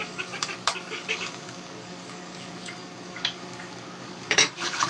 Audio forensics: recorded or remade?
remade